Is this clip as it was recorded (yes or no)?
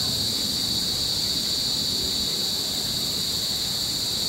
yes